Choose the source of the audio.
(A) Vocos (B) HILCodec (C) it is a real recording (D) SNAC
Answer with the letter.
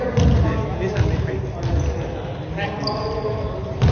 C